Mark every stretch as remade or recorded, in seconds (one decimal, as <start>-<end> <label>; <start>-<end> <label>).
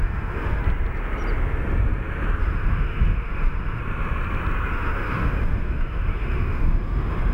0.0-0.6 remade; 0.6-2.4 recorded; 2.4-3.8 remade; 3.8-4.7 recorded; 4.7-7.3 remade